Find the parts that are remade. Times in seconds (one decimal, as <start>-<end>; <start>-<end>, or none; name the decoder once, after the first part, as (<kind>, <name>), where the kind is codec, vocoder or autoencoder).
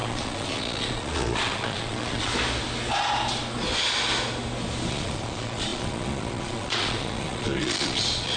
0.0-2.3 (vocoder, Vocos); 4.9-8.4